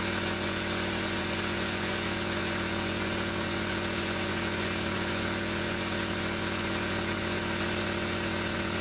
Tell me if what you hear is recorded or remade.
remade